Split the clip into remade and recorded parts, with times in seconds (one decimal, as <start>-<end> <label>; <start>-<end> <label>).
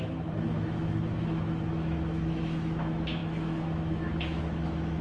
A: 0.0-5.0 remade